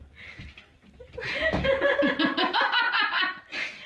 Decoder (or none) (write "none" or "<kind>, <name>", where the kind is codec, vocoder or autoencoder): none